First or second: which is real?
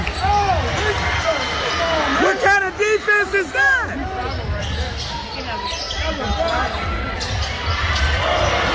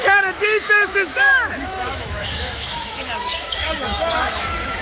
first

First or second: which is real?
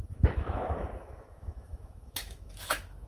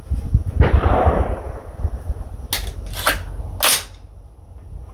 second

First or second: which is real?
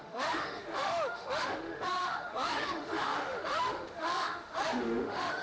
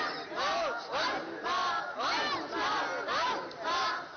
second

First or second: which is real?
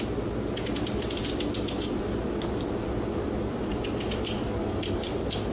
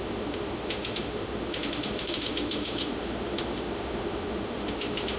first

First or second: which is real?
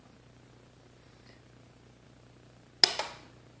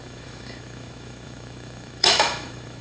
first